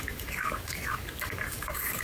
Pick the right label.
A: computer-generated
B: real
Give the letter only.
A